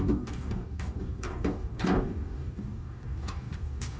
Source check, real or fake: fake